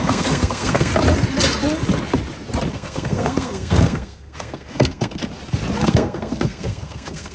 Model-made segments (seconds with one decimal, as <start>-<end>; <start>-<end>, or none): 0.0-0.9; 2.7-5.2; 5.8-7.3